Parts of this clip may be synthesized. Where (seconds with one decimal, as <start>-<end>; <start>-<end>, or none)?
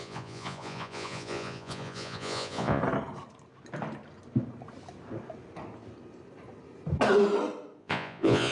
0.0-2.8; 7.8-8.5